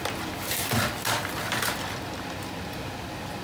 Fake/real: real